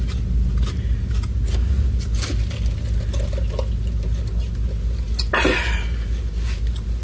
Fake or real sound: real